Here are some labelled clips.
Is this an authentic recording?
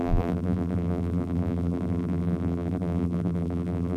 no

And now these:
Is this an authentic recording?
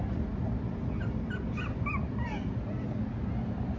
yes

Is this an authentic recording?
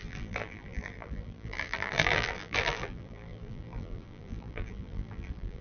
no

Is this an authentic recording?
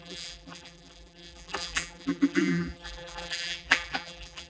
no